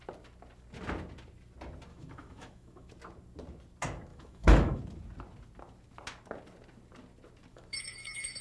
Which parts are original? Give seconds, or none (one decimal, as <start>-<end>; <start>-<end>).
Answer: 0.0-1.9; 2.9-4.1; 4.8-7.5